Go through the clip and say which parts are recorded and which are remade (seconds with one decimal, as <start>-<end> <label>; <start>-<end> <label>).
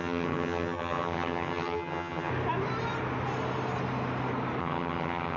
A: 0.0-2.3 remade; 2.3-4.6 recorded; 4.6-5.4 remade